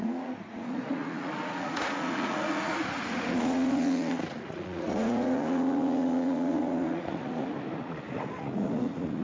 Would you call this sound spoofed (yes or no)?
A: yes